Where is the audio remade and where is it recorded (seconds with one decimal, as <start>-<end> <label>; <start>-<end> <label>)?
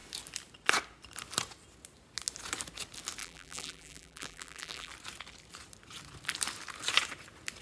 0.0-3.2 recorded; 3.2-4.9 remade; 4.9-7.6 recorded